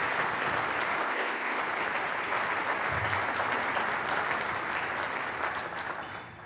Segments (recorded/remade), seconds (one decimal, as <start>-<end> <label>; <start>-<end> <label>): 0.0-1.0 recorded; 1.0-1.6 remade; 1.6-6.5 recorded